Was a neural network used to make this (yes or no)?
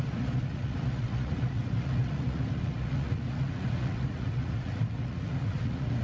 yes